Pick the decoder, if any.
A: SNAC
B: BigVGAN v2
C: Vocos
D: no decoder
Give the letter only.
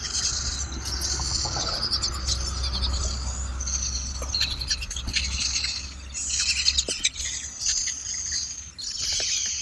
D